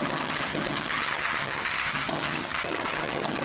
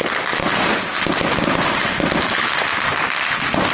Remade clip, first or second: first